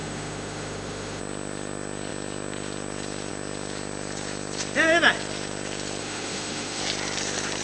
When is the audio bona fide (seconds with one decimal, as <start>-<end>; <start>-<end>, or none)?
1.2-6.0; 6.8-7.6